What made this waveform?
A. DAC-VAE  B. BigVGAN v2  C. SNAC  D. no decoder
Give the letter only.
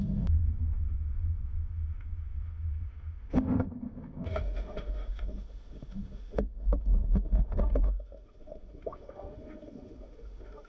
A